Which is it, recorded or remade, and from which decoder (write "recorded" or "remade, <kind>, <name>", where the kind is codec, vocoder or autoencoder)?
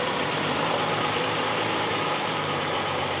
remade, vocoder, BigVGAN v2